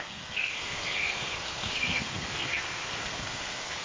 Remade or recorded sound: remade